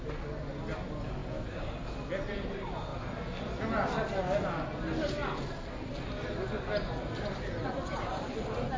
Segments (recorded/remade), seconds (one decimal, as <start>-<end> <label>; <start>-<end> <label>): 0.0-8.8 recorded